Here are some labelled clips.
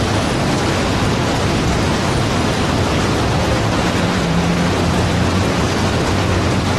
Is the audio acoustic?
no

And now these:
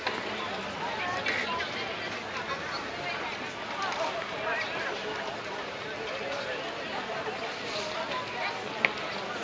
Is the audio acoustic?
yes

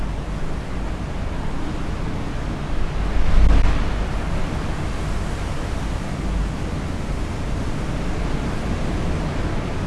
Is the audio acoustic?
yes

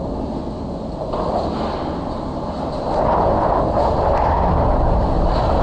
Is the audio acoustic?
yes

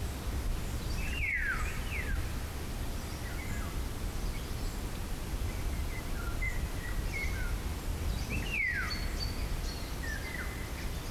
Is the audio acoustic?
yes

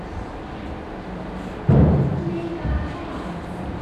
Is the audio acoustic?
yes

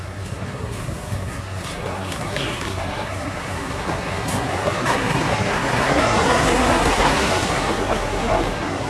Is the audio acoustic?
no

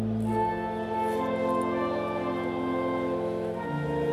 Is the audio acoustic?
yes